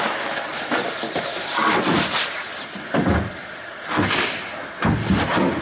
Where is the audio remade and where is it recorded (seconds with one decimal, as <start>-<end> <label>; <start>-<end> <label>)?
0.0-0.5 recorded; 0.5-3.7 remade; 3.7-5.6 recorded